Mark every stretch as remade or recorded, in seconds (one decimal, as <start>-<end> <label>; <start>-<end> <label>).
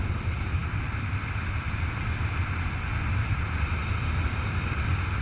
0.0-5.2 recorded